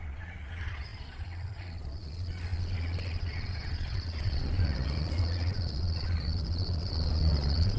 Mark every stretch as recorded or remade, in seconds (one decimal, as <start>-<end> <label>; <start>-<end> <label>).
0.0-7.8 remade